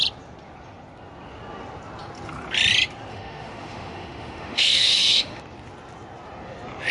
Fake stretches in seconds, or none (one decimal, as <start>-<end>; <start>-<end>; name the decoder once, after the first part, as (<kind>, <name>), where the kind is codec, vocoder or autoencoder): 3.1-5.4 (autoencoder, DAC-VAE)